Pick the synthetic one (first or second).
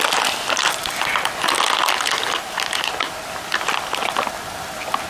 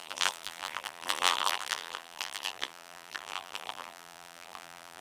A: second